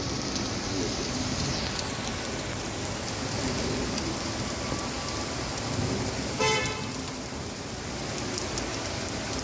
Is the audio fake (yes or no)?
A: no